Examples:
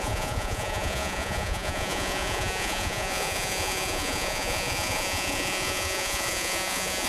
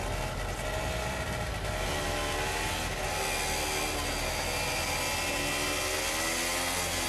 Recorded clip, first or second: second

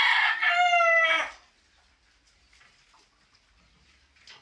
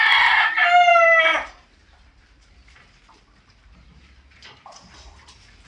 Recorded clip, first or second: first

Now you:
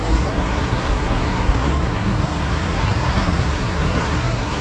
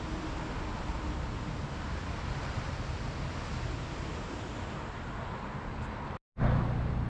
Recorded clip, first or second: second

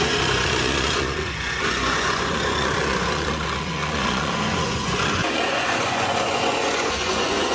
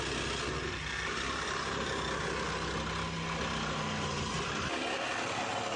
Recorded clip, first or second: second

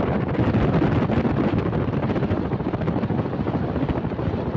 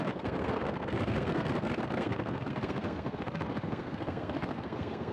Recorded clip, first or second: first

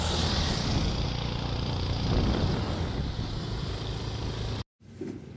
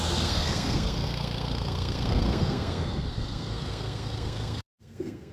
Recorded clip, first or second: first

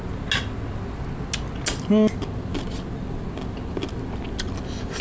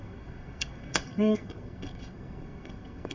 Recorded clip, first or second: first